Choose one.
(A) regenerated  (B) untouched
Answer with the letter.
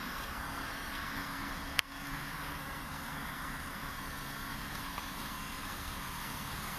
A